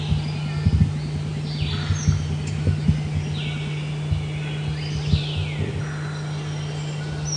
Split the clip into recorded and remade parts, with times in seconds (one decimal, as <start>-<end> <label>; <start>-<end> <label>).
0.0-7.4 recorded